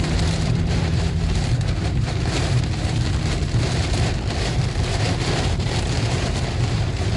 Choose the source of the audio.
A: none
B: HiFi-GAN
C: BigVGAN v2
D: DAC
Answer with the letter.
C